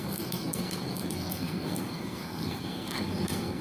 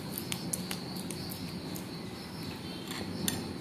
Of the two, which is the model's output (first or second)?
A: first